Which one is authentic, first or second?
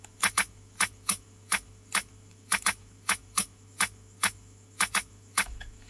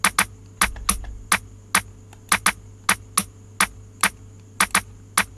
second